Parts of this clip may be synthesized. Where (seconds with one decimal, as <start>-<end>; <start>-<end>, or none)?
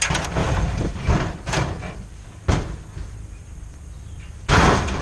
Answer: none